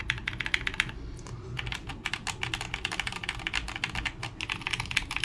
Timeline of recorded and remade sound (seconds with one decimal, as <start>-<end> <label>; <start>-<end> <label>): 0.0-5.2 recorded